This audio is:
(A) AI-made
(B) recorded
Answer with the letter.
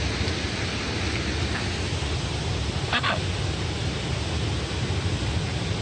B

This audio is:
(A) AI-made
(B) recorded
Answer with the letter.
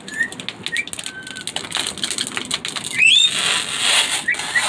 B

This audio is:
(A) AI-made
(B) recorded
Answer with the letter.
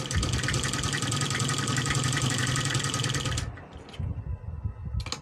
B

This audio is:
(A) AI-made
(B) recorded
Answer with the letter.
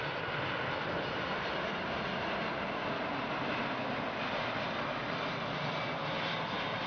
B